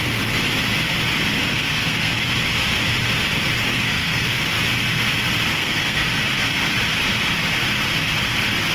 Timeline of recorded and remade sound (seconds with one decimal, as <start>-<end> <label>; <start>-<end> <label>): 0.0-1.5 recorded; 1.5-2.1 remade; 2.1-3.7 recorded; 3.7-4.4 remade; 4.4-5.5 recorded; 5.5-6.1 remade; 6.1-8.7 recorded

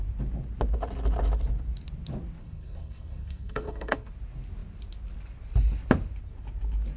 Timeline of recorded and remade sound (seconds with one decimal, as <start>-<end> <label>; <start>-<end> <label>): 0.0-2.4 recorded; 2.4-4.1 remade; 4.1-7.0 recorded

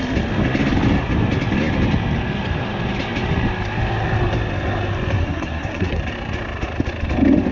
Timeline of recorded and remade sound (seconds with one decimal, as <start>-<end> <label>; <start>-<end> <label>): 0.0-5.2 recorded; 5.2-6.0 remade; 6.0-7.5 recorded

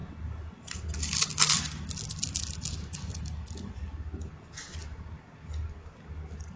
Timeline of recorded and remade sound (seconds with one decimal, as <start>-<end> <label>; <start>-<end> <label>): 0.0-6.6 recorded